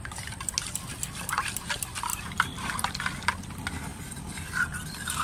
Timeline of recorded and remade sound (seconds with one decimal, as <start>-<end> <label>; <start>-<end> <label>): 0.0-2.1 recorded; 2.1-3.0 remade; 3.0-5.2 recorded